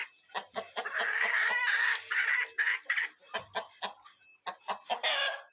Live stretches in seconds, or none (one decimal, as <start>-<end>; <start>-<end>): 0.0-5.5